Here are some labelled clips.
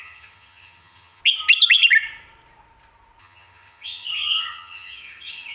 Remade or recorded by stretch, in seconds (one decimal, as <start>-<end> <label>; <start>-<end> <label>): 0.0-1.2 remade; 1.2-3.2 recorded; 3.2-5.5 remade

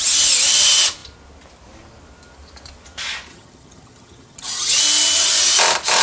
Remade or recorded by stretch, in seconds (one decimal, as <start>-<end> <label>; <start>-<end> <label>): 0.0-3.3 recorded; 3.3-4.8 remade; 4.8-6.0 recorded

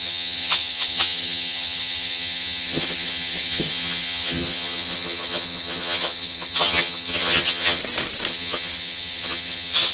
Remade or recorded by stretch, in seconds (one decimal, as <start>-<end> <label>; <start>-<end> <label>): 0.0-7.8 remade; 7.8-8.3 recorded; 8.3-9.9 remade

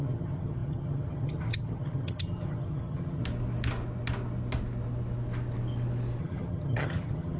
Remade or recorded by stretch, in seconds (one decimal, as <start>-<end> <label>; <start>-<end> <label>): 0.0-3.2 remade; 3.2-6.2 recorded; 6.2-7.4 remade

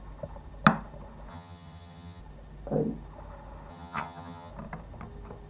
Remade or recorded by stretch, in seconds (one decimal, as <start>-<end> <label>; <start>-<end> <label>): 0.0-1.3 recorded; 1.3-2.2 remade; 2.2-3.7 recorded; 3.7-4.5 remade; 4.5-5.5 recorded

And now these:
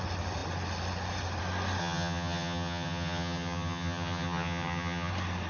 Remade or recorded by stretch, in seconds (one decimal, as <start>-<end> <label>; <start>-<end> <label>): 0.0-1.8 recorded; 1.8-5.1 remade; 5.1-5.5 recorded

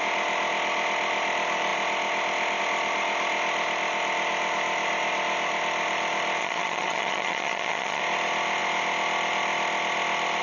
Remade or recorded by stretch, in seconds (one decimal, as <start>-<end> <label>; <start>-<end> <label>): 0.0-6.4 recorded; 6.4-8.0 remade; 8.0-10.4 recorded